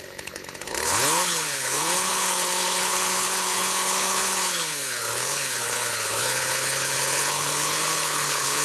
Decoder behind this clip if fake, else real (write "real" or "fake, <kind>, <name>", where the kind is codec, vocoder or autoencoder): fake, codec, HILCodec